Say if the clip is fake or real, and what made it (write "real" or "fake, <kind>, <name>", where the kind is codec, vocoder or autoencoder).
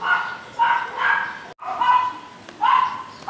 real